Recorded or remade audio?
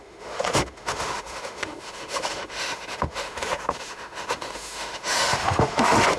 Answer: remade